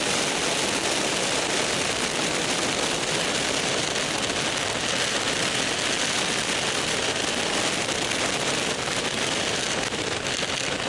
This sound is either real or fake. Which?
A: real